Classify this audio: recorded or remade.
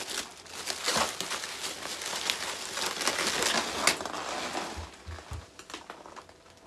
recorded